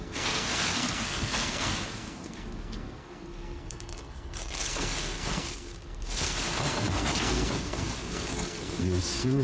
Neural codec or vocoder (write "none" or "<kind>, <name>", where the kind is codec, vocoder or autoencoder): codec, SNAC